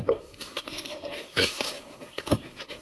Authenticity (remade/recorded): remade